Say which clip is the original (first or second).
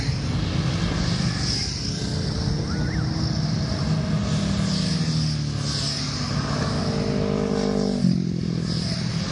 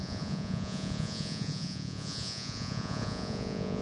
first